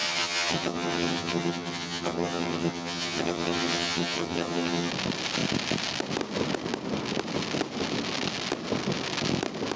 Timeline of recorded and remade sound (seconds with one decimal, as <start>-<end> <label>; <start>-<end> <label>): 0.0-4.9 remade; 4.9-9.8 recorded